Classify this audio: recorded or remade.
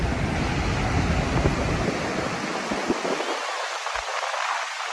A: recorded